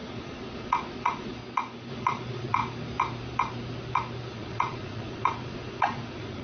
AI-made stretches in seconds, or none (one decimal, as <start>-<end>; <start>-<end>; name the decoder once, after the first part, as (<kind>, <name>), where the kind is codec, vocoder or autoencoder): 0.0-1.4 (vocoder, Vocos); 1.9-2.6; 4.3-6.4